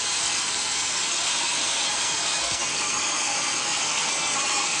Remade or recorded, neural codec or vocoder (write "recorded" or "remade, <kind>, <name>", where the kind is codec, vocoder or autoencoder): remade, codec, SNAC